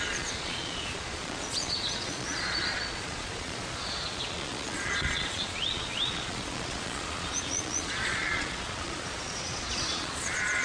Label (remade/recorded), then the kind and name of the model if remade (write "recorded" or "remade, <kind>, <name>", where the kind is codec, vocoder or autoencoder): remade, vocoder, Vocos